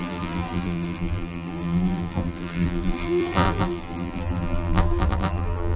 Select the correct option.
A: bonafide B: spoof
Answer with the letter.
B